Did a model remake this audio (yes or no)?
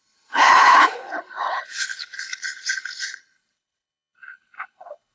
yes